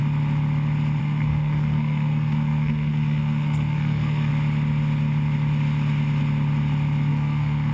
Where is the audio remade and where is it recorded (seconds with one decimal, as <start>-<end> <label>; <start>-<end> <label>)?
0.0-1.0 recorded; 1.0-4.3 remade; 4.3-7.1 recorded; 7.1-7.7 remade